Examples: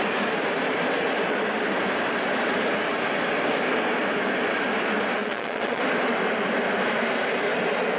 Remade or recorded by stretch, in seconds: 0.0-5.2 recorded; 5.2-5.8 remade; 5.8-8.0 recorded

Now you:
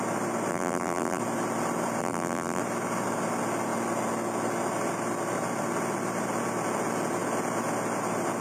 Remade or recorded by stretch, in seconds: 0.0-0.5 recorded; 0.5-1.2 remade; 1.2-2.0 recorded; 2.0-2.6 remade; 2.6-8.4 recorded

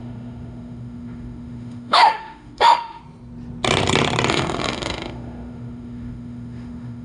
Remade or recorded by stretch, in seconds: 0.0-3.0 remade; 3.0-4.3 recorded; 4.3-7.0 remade

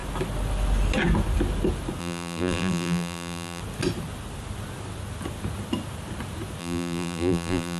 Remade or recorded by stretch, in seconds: 0.0-2.0 recorded; 2.0-3.6 remade; 3.6-6.6 recorded; 6.6-7.8 remade

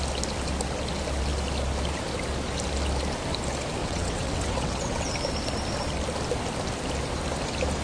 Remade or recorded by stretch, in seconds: 0.0-3.8 recorded; 3.8-5.1 remade; 5.1-7.8 recorded

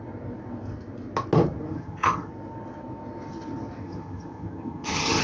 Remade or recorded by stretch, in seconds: 0.0-1.7 recorded; 1.7-2.3 remade; 2.3-3.8 recorded; 3.8-5.2 remade